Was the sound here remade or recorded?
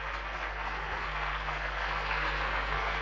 remade